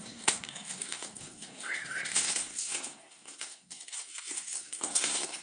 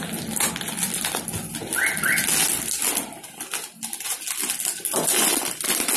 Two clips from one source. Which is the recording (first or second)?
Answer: second